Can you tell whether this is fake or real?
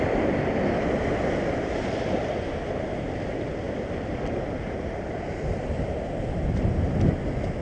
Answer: real